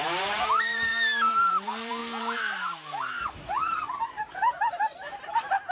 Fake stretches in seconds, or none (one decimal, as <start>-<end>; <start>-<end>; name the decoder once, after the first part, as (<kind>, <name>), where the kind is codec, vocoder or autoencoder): 0.0-0.9 (vocoder, BigVGAN v2); 1.5-5.7